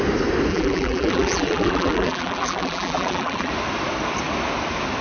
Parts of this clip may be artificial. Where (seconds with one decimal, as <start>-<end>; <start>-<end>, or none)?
0.5-3.5